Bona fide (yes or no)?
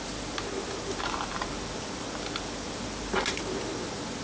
yes